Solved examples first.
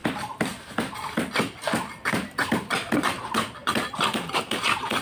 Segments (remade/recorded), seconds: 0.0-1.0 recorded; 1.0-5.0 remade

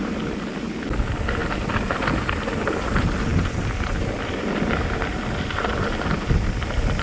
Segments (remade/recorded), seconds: 0.0-7.0 recorded

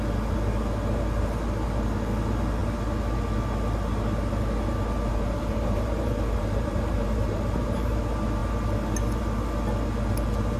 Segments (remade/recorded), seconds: 0.0-5.1 recorded; 5.1-8.0 remade; 8.0-10.6 recorded

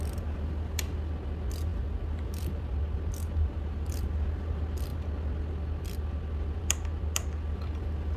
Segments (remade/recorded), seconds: 0.0-1.7 recorded; 1.7-2.7 remade; 2.7-8.2 recorded

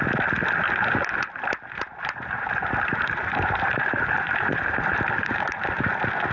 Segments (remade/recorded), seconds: 0.0-1.9 recorded; 1.9-5.7 remade; 5.7-6.3 recorded

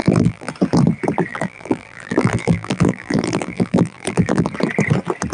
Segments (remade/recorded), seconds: 0.0-0.5 remade; 0.5-1.3 recorded; 1.3-4.5 remade; 4.5-5.3 recorded

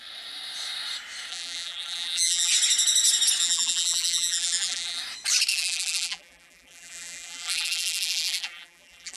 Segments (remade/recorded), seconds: 0.0-1.3 recorded; 1.3-2.5 remade; 2.5-3.4 recorded; 3.4-5.0 remade; 5.0-5.5 recorded; 5.5-9.2 remade

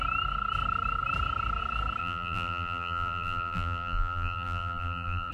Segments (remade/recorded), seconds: 0.0-2.0 recorded; 2.0-5.3 remade